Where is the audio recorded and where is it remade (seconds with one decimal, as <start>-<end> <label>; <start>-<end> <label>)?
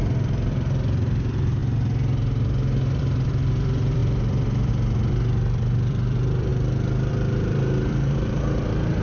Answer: 0.0-1.6 remade; 1.6-3.0 recorded; 3.0-9.0 remade